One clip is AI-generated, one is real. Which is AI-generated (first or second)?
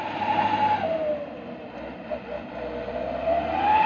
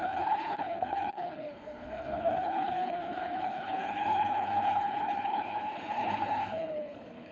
second